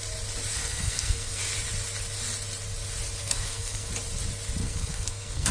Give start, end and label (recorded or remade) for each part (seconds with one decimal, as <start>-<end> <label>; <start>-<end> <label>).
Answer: 0.0-0.5 recorded; 0.5-1.4 remade; 1.4-3.2 recorded; 3.2-3.9 remade; 3.9-4.6 recorded; 4.6-5.5 remade